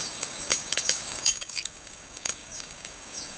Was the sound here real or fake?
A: fake